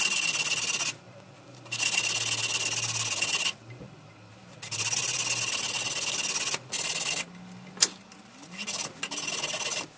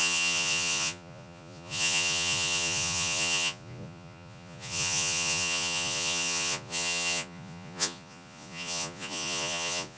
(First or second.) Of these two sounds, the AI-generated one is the second